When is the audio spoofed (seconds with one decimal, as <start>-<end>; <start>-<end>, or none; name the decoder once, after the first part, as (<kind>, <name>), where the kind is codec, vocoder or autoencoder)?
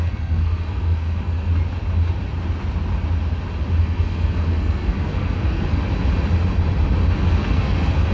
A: 0.0-1.5 (codec, SNAC); 3.8-5.8; 7.2-8.1